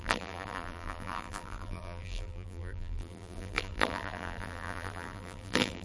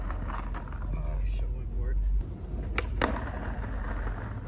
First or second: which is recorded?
second